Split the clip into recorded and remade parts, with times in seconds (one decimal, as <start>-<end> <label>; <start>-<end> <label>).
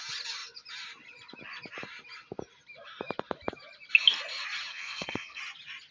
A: 0.0-4.7 recorded; 4.7-5.4 remade; 5.4-5.9 recorded